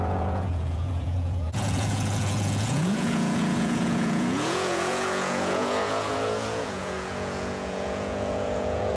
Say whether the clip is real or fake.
fake